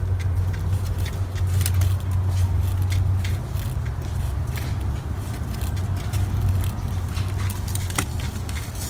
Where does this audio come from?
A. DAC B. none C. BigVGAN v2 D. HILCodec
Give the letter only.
B